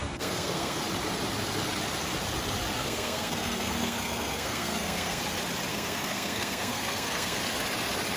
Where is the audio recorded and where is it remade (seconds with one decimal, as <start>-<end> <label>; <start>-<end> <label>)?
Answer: 0.0-0.8 remade; 0.8-2.8 recorded; 2.8-5.2 remade; 5.2-5.7 recorded; 5.7-7.4 remade; 7.4-8.2 recorded